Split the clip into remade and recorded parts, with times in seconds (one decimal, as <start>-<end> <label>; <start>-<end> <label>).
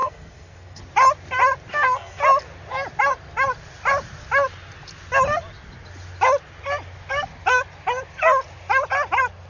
0.0-0.8 remade; 0.8-1.7 recorded; 1.7-2.2 remade; 2.2-9.5 recorded